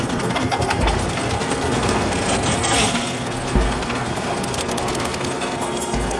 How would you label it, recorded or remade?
remade